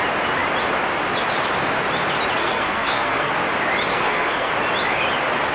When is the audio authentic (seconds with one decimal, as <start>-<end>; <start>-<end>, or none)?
0.0-2.4; 3.3-3.9; 4.5-5.5